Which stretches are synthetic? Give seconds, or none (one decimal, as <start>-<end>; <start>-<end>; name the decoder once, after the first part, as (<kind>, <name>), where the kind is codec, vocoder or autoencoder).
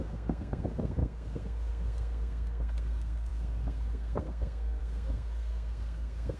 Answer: 0.0-6.4 (codec, SNAC)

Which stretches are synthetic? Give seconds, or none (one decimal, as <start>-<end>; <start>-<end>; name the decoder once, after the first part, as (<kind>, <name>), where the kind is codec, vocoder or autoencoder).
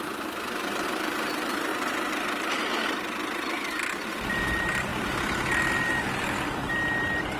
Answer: 0.0-1.7 (vocoder, BigVGAN v2); 4.0-4.9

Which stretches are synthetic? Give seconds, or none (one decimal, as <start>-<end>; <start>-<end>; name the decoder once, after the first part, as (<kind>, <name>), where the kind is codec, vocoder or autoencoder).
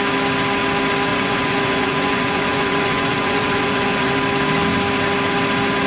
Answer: 1.1-4.1 (vocoder, Vocos)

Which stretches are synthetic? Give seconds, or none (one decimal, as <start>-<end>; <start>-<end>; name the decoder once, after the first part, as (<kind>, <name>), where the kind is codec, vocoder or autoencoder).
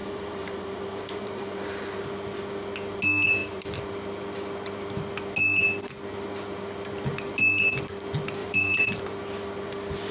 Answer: 0.0-2.0 (vocoder, BigVGAN v2); 3.4-3.9; 8.4-9.0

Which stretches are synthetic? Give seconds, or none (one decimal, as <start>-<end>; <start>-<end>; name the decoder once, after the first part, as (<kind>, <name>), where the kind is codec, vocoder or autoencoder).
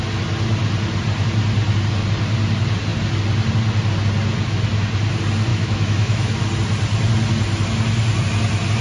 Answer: 5.5-6.4 (autoencoder, DAC-VAE)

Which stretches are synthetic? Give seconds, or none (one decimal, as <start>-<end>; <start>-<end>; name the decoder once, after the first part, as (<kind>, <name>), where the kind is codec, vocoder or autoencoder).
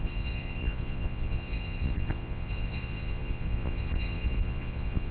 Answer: 0.0-5.1 (vocoder, Vocos)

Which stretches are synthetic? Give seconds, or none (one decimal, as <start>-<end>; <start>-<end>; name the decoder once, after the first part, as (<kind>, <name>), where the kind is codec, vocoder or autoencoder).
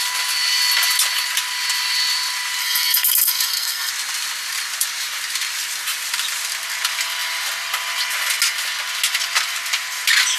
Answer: 2.6-3.9 (codec, SNAC)